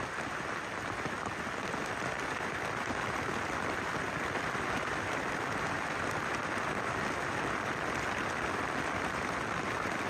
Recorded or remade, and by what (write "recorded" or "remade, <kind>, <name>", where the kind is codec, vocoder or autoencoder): recorded